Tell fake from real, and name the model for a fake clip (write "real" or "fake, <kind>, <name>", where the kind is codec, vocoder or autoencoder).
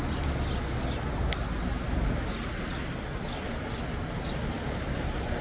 real